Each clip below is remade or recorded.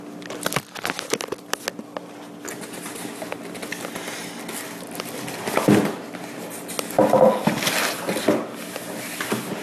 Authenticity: recorded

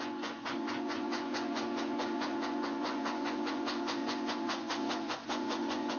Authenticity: remade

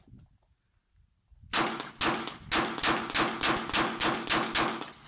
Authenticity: recorded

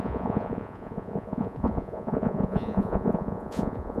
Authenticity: remade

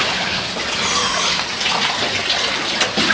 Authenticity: recorded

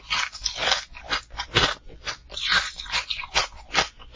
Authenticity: recorded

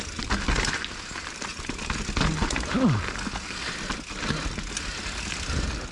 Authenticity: recorded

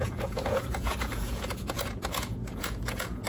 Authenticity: remade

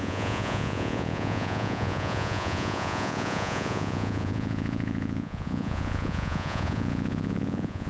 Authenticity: remade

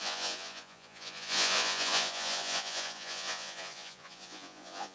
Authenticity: remade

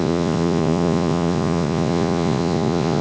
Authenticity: remade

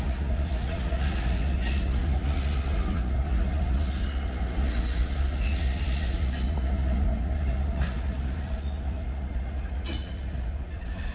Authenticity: remade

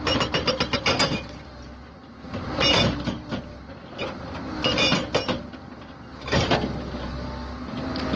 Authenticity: recorded